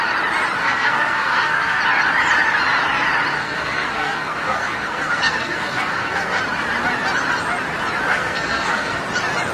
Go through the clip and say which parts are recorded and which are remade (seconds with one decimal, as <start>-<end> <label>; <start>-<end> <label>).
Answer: 0.0-0.6 recorded; 0.6-1.8 remade; 1.8-3.4 recorded; 3.4-6.4 remade; 6.4-8.1 recorded; 8.1-9.0 remade; 9.0-9.5 recorded